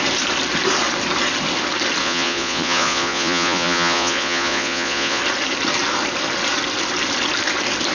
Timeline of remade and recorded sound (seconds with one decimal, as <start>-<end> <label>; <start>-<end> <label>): 0.0-2.0 recorded; 2.0-5.2 remade; 5.2-7.9 recorded